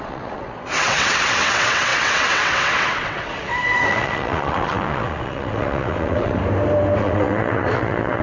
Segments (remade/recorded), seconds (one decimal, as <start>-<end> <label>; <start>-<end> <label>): 0.0-6.4 remade; 6.4-7.0 recorded; 7.0-8.2 remade